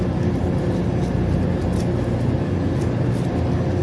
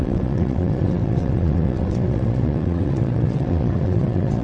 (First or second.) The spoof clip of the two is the second